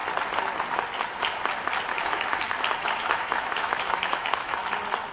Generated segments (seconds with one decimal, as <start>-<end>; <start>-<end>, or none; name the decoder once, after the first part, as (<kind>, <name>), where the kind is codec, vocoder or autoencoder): 1.9-2.4 (autoencoder, DAC-VAE); 2.8-4.6